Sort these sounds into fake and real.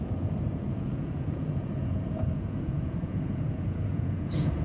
fake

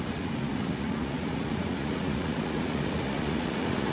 fake